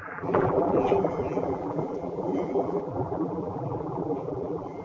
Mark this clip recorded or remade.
remade